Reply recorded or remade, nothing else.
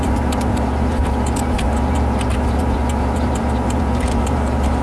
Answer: remade